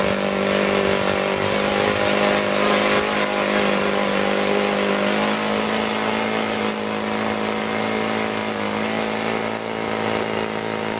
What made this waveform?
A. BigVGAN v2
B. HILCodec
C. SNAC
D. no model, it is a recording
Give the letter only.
D